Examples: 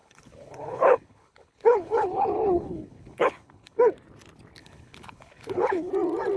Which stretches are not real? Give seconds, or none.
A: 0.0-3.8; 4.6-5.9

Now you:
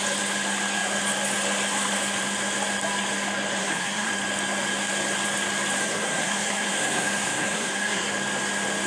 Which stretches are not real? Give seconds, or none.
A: 3.6-4.1; 5.8-8.1